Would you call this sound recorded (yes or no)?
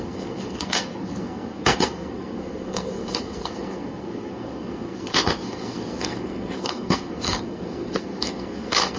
no